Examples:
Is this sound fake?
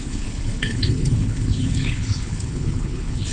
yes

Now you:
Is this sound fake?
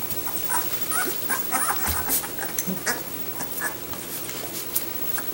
yes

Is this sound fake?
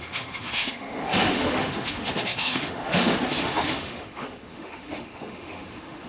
yes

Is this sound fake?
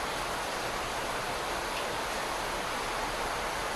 no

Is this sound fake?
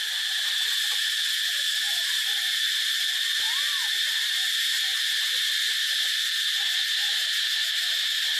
no